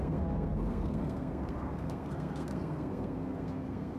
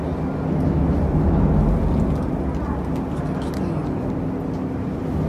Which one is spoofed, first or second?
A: first